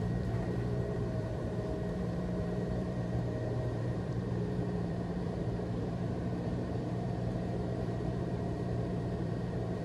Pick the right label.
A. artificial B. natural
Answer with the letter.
A